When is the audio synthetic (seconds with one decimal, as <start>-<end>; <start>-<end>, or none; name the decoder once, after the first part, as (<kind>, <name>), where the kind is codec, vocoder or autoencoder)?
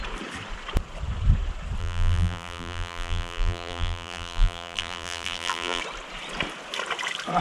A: 1.8-5.8 (vocoder, BigVGAN v2)